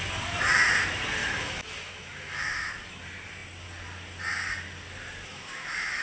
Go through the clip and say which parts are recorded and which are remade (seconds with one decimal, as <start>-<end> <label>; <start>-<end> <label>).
0.0-1.2 recorded; 1.2-2.7 remade; 2.7-5.3 recorded; 5.3-6.0 remade